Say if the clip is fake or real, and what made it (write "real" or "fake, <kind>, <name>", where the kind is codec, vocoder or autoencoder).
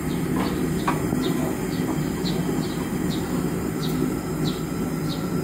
real